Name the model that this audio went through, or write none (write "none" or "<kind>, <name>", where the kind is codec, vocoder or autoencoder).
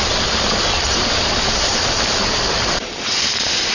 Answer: vocoder, BigVGAN v2